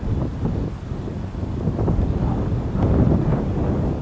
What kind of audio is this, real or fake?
real